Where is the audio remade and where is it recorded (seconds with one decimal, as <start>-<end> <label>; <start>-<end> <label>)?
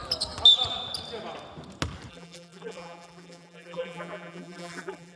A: 0.0-2.1 recorded; 2.1-5.2 remade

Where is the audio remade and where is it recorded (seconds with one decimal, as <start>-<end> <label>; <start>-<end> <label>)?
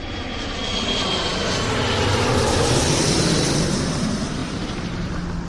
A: 0.0-4.4 recorded; 4.4-5.1 remade; 5.1-5.5 recorded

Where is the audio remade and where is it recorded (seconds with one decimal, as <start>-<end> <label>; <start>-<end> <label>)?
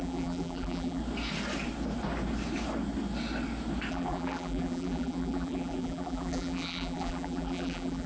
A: 0.0-1.0 remade; 1.0-3.9 recorded; 3.9-8.1 remade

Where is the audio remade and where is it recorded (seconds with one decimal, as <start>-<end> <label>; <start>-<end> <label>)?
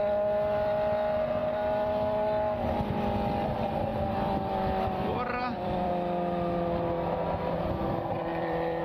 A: 0.0-3.9 recorded; 3.9-5.9 remade; 5.9-8.3 recorded; 8.3-8.8 remade